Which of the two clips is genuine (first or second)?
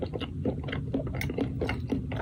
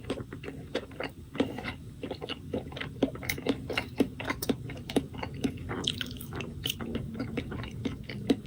first